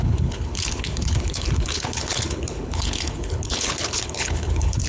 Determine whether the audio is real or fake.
fake